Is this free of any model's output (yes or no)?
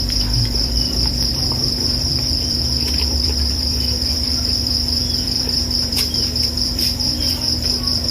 no